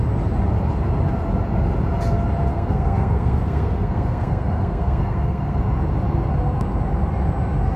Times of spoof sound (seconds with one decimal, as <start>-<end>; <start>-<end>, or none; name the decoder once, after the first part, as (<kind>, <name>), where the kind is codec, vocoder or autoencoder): 2.5-5.6 (codec, SNAC)